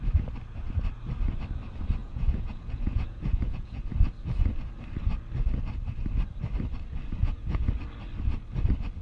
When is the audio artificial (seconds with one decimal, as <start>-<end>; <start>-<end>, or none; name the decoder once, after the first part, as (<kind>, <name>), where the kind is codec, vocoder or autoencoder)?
2.0-3.8 (vocoder, Vocos); 7.2-7.8